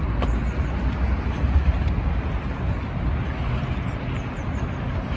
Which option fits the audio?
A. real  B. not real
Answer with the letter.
A